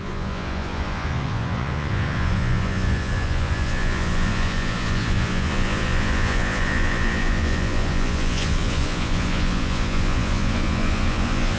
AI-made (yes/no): yes